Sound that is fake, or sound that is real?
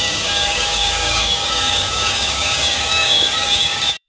fake